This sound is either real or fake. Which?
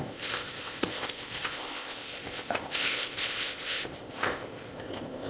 fake